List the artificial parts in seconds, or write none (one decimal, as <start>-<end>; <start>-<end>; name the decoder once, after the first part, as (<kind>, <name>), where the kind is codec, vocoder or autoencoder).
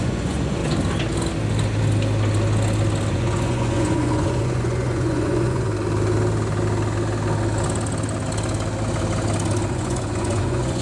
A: 0.0-0.6 (vocoder, Vocos); 3.1-5.7; 9.7-10.8